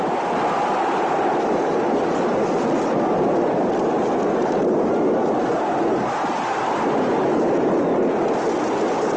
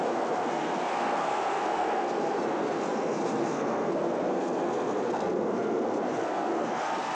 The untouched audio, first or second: first